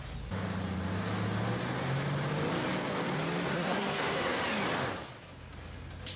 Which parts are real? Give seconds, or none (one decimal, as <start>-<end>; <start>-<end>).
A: 0.0-3.5; 4.4-6.2